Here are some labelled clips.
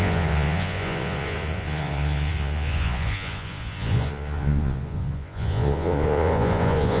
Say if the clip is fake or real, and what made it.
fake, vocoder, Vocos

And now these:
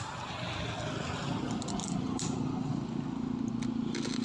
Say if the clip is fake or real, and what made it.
real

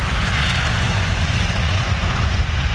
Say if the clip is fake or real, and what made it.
fake, vocoder, Vocos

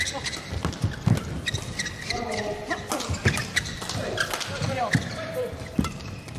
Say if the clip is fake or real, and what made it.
real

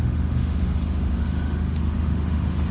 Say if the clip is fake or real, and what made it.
fake, autoencoder, DAC-VAE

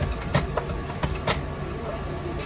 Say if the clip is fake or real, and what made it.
real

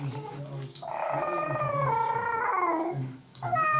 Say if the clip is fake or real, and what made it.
fake, codec, DAC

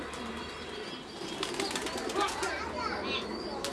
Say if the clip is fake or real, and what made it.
real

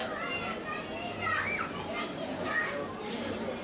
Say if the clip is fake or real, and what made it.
real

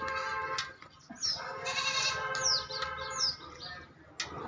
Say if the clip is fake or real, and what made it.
real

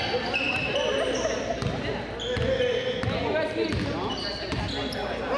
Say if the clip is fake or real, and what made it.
real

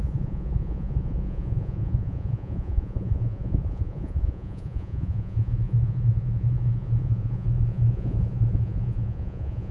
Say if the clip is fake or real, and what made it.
fake, vocoder, Vocos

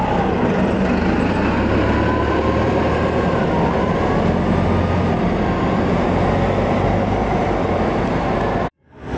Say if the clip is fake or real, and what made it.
real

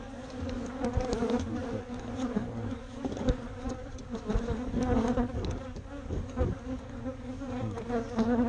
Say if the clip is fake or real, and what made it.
fake, codec, DAC